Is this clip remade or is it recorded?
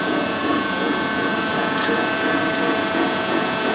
remade